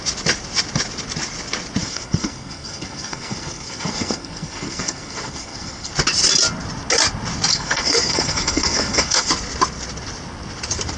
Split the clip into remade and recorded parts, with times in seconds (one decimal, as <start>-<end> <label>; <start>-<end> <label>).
0.0-1.8 recorded; 1.8-5.9 remade; 5.9-7.5 recorded; 7.5-9.3 remade; 9.3-11.0 recorded